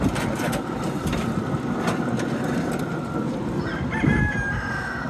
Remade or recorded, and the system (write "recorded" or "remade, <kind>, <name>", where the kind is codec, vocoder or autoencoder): recorded